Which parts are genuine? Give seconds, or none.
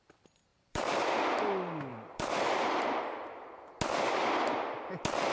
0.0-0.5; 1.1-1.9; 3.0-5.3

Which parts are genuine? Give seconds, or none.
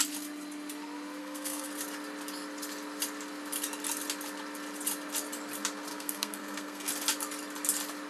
0.0-1.2; 1.7-5.9; 6.9-8.1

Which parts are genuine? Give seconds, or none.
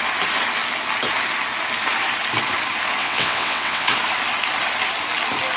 0.0-3.0; 3.9-5.6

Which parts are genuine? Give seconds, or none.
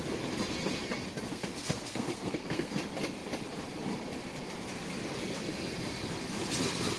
0.0-1.3; 2.8-7.0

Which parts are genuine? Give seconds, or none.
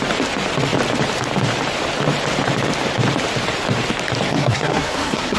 0.0-4.3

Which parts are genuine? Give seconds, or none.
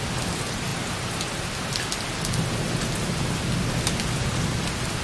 0.0-5.0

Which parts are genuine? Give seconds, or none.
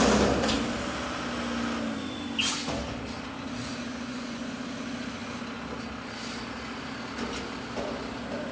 0.0-3.9; 4.5-8.5